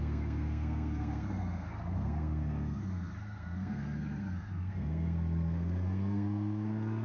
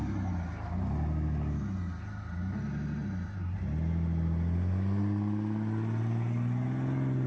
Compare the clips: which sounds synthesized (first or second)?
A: first